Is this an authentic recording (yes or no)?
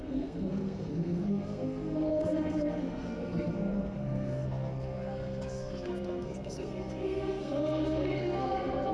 no